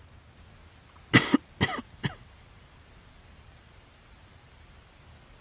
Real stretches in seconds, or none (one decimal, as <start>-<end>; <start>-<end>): 0.0-1.8; 5.0-5.4

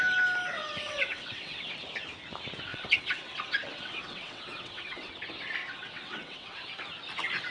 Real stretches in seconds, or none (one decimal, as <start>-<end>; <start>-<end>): 0.0-0.6; 1.7-2.7; 5.1-5.6; 6.6-7.5

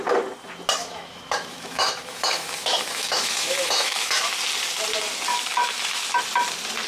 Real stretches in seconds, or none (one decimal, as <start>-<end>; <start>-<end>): 0.0-0.8; 4.2-5.3; 6.2-6.9

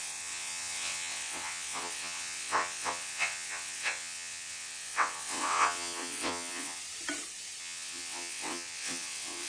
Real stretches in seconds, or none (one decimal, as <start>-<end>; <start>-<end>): 6.8-7.6

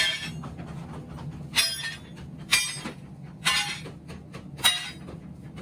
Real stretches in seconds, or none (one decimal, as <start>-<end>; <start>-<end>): 0.0-5.6

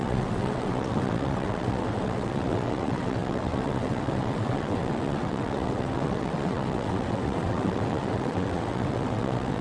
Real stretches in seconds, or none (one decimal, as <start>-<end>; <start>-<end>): none